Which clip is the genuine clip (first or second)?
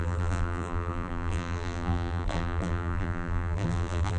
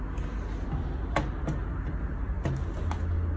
second